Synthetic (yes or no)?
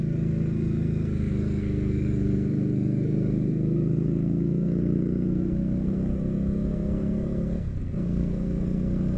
yes